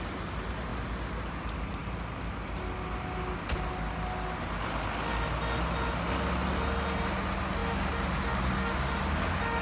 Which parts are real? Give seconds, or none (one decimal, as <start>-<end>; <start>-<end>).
0.0-9.6